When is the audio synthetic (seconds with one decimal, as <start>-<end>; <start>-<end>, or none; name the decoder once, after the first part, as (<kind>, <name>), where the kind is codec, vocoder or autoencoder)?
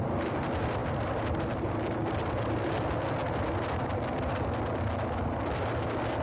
none